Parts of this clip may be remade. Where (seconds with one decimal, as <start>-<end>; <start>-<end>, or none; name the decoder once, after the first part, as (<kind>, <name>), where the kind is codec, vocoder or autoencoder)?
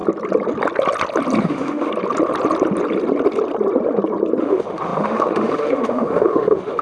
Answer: 1.4-1.9 (autoencoder, DAC-VAE); 4.4-6.8